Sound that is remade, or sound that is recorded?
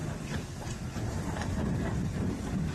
recorded